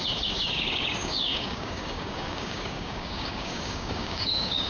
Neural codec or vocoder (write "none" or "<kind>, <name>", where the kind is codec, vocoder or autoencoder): codec, DAC